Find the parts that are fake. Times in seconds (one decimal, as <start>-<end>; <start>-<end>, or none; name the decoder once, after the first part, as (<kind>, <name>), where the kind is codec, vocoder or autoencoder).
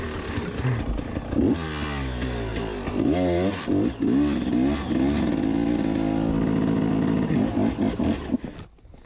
none